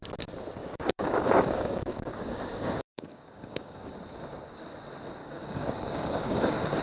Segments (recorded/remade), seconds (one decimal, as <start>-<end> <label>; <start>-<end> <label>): 0.0-0.6 recorded; 0.6-3.9 remade; 3.9-5.2 recorded; 5.2-6.8 remade